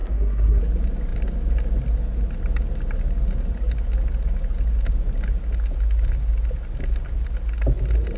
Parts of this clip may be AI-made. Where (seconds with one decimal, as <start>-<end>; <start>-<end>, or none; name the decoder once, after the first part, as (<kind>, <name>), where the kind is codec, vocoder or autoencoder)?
0.0-0.6 (codec, SNAC)